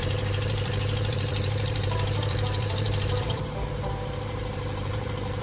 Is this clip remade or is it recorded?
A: remade